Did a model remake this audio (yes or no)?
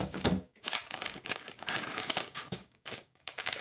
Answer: yes